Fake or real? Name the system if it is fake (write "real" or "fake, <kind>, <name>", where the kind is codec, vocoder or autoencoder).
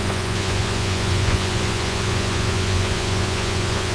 fake, vocoder, Vocos